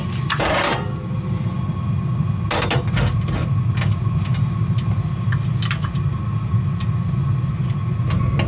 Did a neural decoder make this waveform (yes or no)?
no